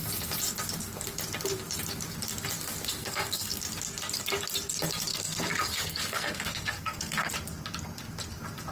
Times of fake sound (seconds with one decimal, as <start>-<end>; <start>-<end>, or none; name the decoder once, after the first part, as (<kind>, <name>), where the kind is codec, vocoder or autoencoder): 3.0-3.6 (codec, SNAC); 5.1-7.3